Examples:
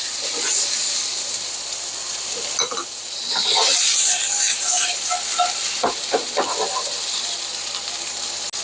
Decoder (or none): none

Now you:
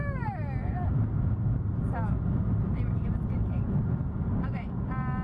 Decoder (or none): none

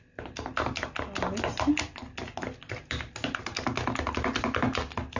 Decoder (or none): none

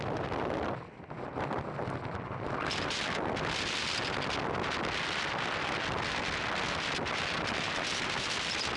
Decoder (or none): none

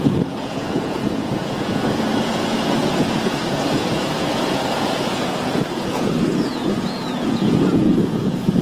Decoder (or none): vocoder, Vocos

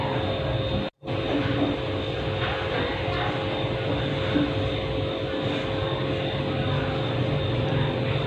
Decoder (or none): none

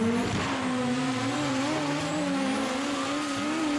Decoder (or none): none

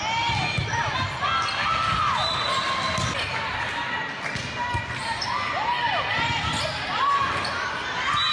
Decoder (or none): none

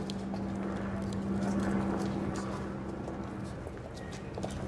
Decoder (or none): none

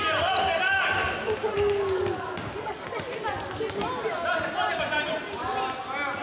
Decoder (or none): none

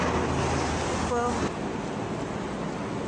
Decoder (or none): none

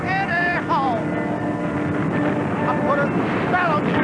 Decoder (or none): none